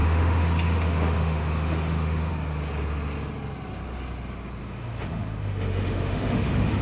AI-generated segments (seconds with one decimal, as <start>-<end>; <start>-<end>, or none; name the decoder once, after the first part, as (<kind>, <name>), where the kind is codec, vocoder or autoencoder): 0.0-2.3 (autoencoder, DAC-VAE); 4.6-6.8